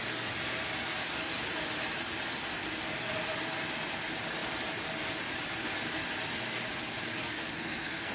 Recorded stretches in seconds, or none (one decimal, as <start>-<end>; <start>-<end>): 0.0-7.1